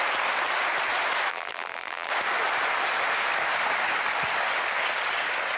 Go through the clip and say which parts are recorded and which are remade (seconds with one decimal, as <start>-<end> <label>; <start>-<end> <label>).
0.0-1.3 recorded; 1.3-2.1 remade; 2.1-5.6 recorded